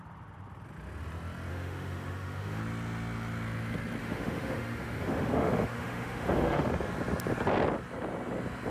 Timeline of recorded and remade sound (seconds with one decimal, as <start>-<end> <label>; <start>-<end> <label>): 0.0-1.5 recorded; 1.5-2.6 remade; 2.6-4.0 recorded; 4.0-6.7 remade; 6.7-8.7 recorded